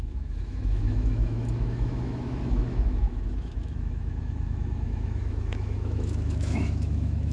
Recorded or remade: remade